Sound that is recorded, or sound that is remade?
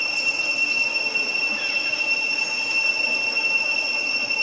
recorded